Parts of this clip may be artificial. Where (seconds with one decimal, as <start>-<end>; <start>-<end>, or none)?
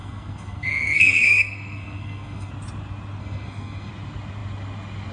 0.0-2.5; 3.2-3.9